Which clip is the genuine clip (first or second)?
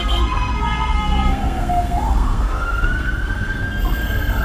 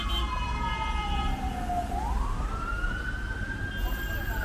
second